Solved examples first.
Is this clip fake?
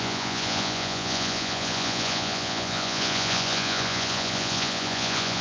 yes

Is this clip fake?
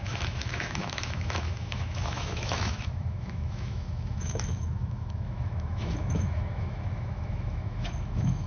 yes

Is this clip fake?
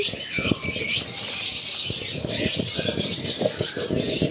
no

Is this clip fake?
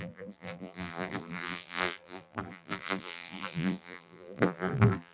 yes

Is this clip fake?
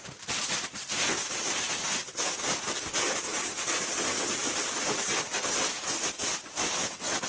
no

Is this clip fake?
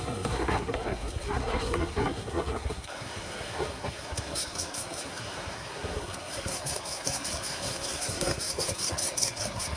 yes